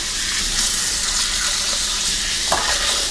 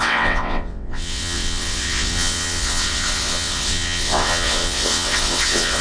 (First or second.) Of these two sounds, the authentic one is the first